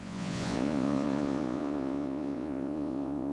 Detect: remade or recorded remade